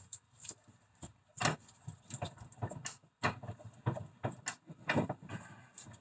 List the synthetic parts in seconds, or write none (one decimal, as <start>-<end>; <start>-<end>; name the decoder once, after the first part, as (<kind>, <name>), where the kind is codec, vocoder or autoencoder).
none